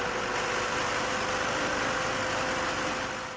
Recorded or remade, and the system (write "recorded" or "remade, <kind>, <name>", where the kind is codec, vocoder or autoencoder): recorded